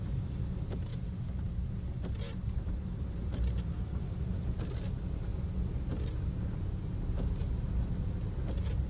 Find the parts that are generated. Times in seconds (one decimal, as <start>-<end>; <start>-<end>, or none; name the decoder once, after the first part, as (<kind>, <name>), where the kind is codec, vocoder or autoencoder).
none